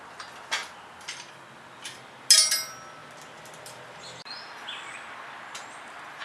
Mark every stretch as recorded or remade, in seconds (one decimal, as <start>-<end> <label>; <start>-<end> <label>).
0.0-6.2 recorded